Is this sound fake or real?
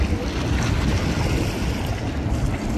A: real